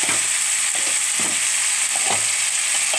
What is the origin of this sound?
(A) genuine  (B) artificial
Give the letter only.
A